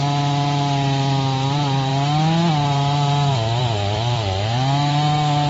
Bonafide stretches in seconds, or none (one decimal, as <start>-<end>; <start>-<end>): 1.9-3.6